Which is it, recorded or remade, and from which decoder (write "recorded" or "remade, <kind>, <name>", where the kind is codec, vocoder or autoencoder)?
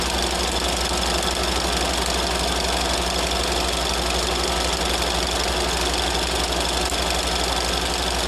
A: recorded